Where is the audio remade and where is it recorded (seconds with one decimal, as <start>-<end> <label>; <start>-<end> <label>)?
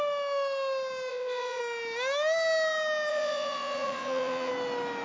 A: 0.0-1.1 recorded; 1.1-1.6 remade; 1.6-3.1 recorded; 3.1-4.5 remade; 4.5-5.0 recorded